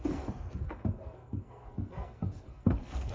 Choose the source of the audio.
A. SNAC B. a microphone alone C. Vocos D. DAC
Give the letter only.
A